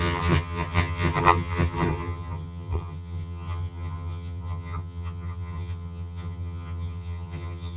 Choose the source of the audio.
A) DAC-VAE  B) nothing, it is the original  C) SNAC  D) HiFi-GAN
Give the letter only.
D